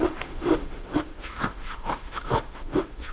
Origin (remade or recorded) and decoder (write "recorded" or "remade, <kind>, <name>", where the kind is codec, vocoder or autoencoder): remade, autoencoder, DAC-VAE